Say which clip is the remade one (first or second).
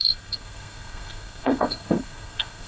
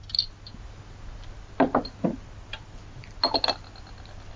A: first